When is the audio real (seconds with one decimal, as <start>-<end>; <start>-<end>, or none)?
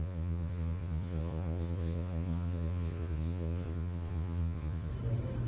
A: 4.9-5.5